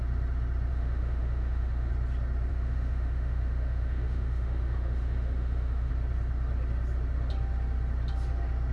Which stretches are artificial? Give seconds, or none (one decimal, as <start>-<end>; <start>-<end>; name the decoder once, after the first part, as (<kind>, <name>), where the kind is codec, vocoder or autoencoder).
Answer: 0.7-1.9 (autoencoder, DAC-VAE); 2.5-5.9